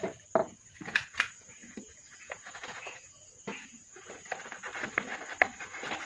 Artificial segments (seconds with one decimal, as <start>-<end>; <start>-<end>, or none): 0.4-4.1